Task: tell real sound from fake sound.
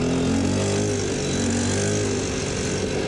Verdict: real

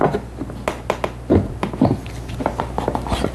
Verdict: real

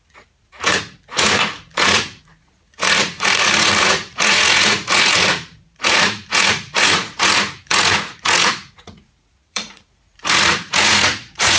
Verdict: fake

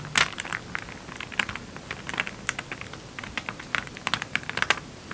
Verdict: real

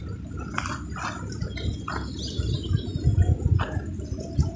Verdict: real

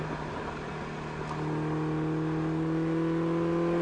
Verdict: real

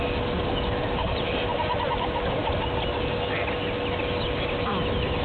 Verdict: real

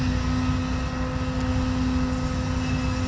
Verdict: real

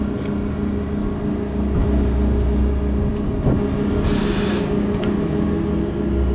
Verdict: real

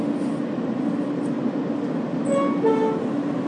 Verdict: real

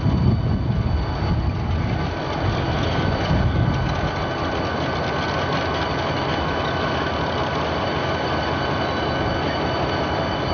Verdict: real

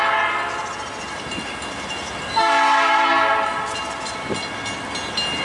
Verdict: real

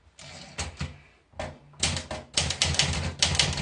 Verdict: real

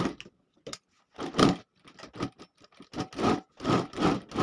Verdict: real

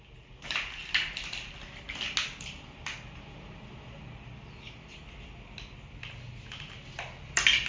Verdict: real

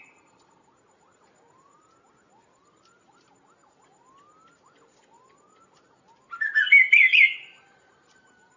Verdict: real